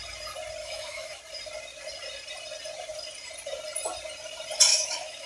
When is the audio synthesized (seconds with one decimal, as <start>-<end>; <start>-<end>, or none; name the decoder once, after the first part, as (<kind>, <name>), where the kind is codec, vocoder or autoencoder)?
0.6-1.2 (autoencoder, DAC-VAE); 4.7-5.3